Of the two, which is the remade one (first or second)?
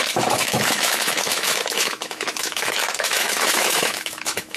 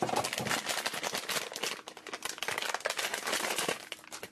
first